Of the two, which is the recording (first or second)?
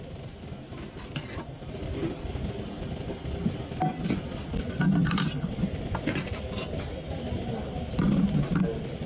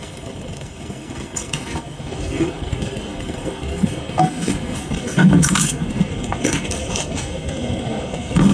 first